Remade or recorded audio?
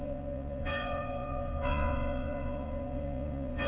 remade